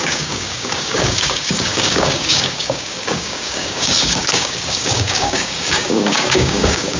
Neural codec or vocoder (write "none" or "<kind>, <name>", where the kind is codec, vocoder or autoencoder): codec, DAC